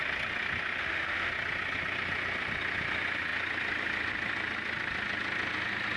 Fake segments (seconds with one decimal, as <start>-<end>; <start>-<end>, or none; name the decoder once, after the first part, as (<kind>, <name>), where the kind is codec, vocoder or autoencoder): 0.8-1.3 (autoencoder, DAC-VAE)

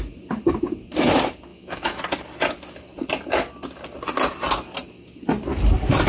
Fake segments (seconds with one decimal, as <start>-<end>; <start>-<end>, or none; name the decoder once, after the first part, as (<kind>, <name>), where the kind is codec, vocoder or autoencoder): 1.5-2.0 (autoencoder, DAC-VAE)

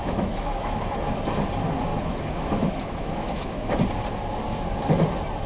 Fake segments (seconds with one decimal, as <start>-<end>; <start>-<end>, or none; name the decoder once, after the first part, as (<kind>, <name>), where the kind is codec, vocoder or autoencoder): 0.0-0.8 (autoencoder, DAC-VAE); 1.9-3.7

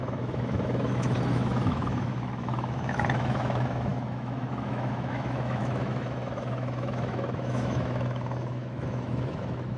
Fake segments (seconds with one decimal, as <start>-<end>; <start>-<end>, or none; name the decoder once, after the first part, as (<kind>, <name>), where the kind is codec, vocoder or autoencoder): 0.0-9.8 (autoencoder, DAC-VAE)

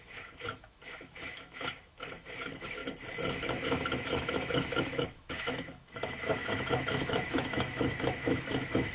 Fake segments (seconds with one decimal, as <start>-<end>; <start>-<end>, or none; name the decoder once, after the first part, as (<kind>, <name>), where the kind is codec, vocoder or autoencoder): 0.0-2.8 (autoencoder, DAC-VAE); 3.3-8.9

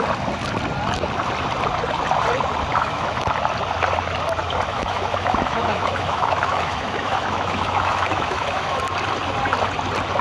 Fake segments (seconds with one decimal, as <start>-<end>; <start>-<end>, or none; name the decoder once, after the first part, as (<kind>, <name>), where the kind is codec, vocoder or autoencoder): 2.7-3.3 (autoencoder, DAC-VAE); 4.7-8.8

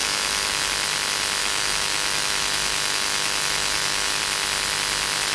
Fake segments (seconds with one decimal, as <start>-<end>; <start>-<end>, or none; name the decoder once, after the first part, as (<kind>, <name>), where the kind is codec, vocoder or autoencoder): 0.0-0.7 (autoencoder, DAC-VAE); 1.4-4.2